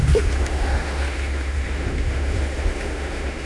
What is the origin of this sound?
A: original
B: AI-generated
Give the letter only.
B